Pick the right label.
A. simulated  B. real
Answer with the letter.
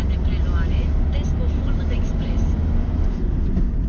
B